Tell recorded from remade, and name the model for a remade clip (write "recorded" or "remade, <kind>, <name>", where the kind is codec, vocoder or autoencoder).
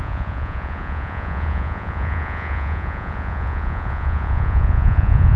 remade, vocoder, Vocos